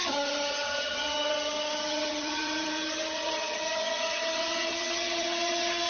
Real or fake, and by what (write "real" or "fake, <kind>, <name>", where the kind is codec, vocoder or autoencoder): fake, vocoder, HiFi-GAN